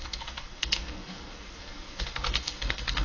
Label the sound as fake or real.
fake